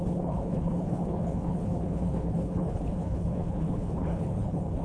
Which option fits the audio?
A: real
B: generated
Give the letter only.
B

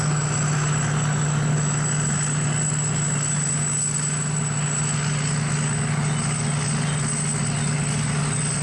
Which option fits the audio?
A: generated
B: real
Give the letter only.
B